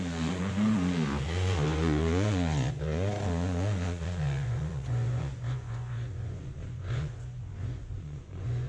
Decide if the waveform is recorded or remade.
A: remade